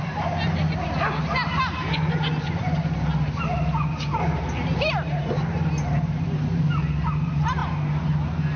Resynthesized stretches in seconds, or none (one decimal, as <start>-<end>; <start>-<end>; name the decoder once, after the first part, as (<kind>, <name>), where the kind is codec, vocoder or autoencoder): none